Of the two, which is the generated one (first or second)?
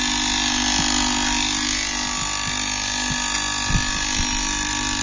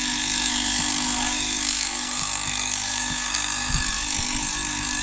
second